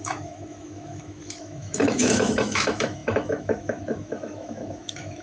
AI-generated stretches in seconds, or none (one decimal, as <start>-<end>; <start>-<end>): 0.0-5.2